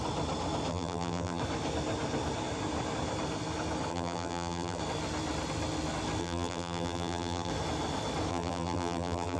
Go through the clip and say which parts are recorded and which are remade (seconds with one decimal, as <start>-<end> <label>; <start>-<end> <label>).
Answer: 0.0-0.7 recorded; 0.7-1.4 remade; 1.4-3.9 recorded; 3.9-4.8 remade; 4.8-6.2 recorded; 6.2-7.5 remade; 7.5-8.3 recorded; 8.3-9.4 remade